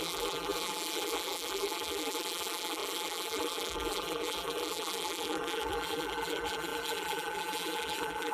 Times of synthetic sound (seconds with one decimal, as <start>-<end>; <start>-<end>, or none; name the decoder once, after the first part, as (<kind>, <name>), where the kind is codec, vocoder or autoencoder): 0.0-8.3 (vocoder, BigVGAN v2)